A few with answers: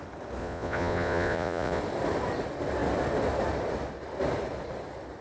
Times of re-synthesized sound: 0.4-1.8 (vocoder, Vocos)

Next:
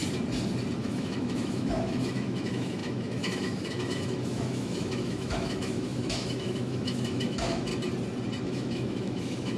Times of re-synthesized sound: 0.8-7.7 (autoencoder, DAC-VAE); 8.4-9.6

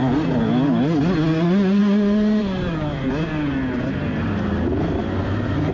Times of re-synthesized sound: none

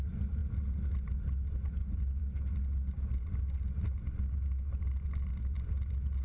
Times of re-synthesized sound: none

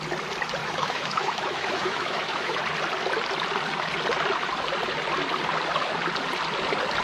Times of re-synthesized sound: 0.6-2.6 (autoencoder, DAC-VAE)

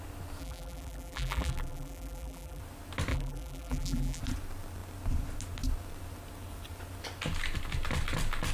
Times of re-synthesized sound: 0.4-2.6 (vocoder, BigVGAN v2); 3.1-4.2

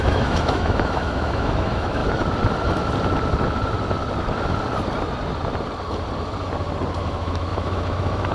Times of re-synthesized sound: 0.0-2.0 (autoencoder, DAC-VAE); 7.0-8.3